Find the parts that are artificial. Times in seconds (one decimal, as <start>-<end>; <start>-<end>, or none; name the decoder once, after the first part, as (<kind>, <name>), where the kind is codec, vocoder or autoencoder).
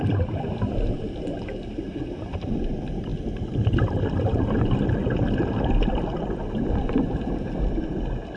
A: none